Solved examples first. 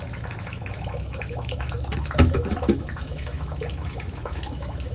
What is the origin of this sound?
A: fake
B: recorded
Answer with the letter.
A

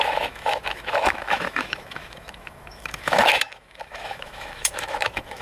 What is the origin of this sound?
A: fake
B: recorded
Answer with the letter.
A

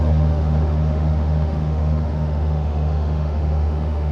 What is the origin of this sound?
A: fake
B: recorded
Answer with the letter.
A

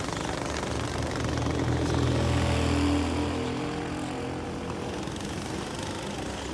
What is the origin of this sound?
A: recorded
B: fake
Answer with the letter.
A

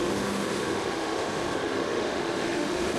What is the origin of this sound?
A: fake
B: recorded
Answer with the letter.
A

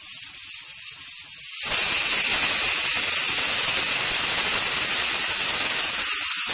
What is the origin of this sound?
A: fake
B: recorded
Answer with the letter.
B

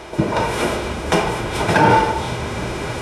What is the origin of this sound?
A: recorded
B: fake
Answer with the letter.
B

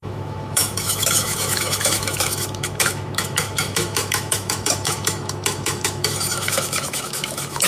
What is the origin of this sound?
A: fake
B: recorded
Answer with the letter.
A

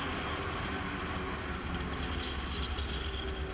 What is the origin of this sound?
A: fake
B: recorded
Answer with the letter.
B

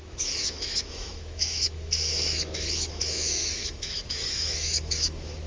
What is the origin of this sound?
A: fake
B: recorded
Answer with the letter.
A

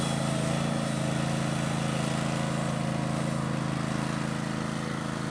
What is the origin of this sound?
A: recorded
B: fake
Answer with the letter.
A